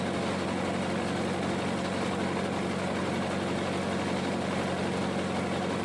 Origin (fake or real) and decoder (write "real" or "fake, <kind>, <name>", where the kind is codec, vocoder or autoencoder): real